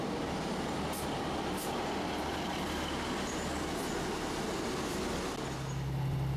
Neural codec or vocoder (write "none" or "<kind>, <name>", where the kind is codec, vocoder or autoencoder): none